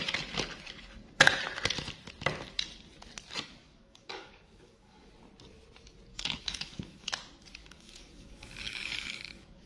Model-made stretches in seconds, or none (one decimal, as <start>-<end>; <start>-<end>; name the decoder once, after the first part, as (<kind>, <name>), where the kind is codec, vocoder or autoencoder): 3.6-5.1 (codec, DAC); 6.1-7.1; 7.6-9.7

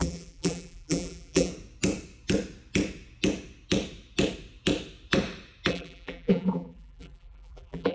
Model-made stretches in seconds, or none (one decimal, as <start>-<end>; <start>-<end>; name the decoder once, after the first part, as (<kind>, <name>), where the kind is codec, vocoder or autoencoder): 0.0-1.5 (vocoder, BigVGAN v2); 5.7-7.9

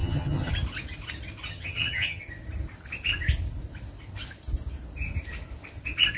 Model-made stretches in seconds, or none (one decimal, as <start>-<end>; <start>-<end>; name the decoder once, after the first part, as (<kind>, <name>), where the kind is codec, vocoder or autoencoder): 0.0-0.5 (vocoder, HiFi-GAN); 1.5-2.2

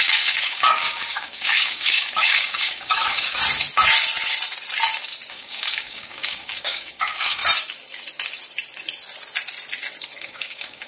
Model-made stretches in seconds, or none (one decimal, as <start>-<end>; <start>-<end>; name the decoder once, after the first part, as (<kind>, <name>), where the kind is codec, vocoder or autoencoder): 0.0-3.4 (codec, DAC); 5.3-7.4; 10.2-10.9

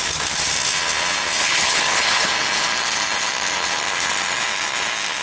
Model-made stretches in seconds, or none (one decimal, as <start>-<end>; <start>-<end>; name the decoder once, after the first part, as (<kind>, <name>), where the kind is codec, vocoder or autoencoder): 1.4-2.3 (codec, HILCodec)

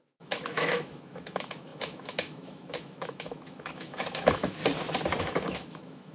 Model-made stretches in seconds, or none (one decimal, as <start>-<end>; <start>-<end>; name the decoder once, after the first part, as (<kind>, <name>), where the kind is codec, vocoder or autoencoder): 0.0-4.6 (autoencoder, DAC-VAE); 5.2-6.1

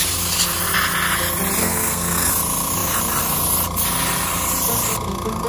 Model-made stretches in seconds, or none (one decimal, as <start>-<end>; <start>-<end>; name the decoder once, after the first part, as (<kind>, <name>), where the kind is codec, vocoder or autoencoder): 1.6-2.3 (codec, SNAC)

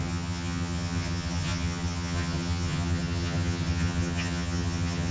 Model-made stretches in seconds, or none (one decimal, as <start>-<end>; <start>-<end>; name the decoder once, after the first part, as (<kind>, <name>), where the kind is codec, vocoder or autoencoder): 0.0-5.1 (vocoder, HiFi-GAN)